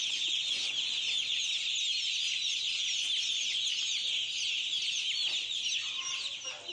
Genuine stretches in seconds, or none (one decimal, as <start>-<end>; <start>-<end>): 0.7-6.7

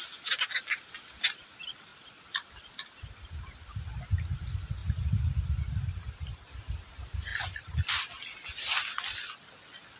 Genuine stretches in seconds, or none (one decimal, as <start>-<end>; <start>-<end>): 0.0-10.0

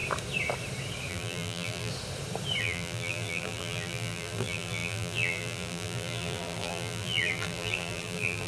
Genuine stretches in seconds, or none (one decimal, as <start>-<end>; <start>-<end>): 0.0-1.1; 1.9-2.6

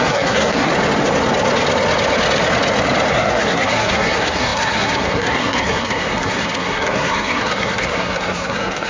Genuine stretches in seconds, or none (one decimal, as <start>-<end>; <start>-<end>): 0.7-3.1

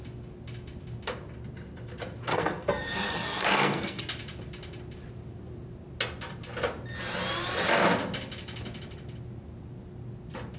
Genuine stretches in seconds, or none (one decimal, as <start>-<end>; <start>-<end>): 0.0-2.3; 4.0-10.6

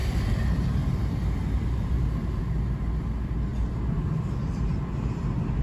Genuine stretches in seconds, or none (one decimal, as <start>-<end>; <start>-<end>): 2.4-5.6

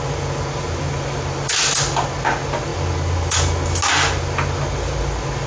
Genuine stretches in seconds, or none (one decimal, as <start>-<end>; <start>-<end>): 0.0-5.5

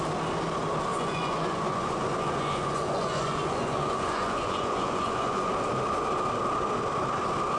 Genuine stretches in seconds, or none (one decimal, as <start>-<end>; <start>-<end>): 0.0-0.9; 5.5-7.6